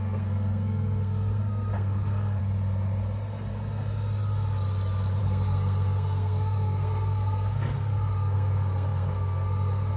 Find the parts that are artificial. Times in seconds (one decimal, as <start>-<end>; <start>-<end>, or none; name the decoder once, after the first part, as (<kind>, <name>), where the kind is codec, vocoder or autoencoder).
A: 0.0-2.4 (codec, SNAC); 5.2-10.0